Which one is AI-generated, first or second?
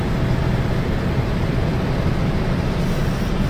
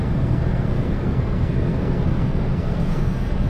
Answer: second